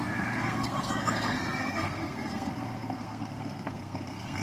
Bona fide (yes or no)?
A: no